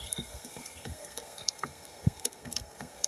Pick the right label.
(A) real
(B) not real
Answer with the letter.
B